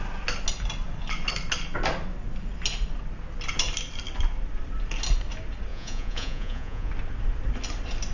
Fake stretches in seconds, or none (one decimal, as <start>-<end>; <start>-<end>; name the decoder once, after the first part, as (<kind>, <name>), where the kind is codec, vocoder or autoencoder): 5.7-6.9 (vocoder, Vocos)